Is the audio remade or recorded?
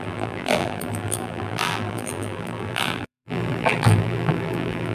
remade